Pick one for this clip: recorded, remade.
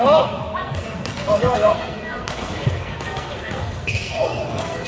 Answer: remade